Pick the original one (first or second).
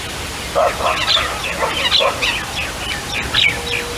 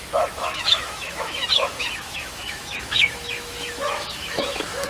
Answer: first